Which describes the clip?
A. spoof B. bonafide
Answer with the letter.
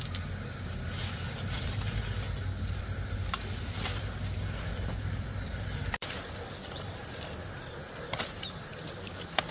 A